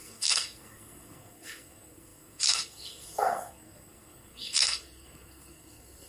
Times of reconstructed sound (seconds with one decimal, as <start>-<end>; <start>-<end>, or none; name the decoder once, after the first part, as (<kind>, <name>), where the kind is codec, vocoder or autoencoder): 0.0-6.1 (codec, SNAC)